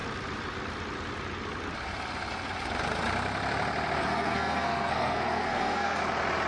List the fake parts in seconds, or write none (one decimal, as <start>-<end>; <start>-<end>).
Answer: 4.0-6.0